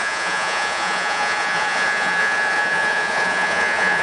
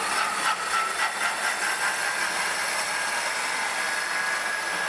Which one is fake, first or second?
first